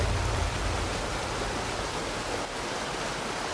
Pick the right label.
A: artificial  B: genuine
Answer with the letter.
B